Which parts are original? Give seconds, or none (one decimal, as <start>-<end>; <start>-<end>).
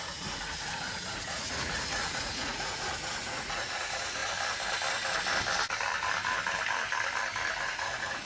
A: 4.2-7.6